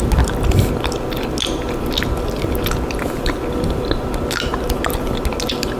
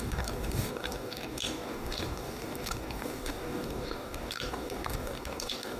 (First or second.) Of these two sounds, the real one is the first